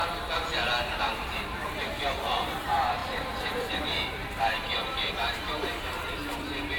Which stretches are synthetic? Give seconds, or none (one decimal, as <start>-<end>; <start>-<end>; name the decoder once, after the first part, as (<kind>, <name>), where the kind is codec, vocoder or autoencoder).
1.0-6.8 (vocoder, BigVGAN v2)